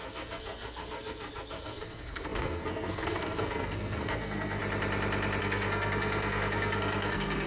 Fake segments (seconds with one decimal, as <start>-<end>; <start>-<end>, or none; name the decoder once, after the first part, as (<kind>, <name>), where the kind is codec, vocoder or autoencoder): 0.0-4.6 (codec, SNAC); 5.4-7.5